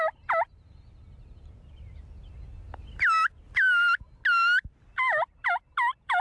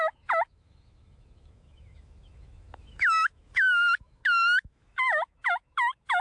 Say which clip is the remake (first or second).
second